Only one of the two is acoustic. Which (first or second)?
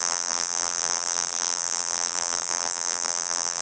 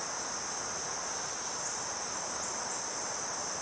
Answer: second